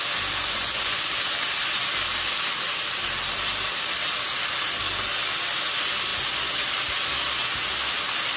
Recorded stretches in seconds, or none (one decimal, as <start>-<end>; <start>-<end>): 0.0-0.4; 1.1-8.4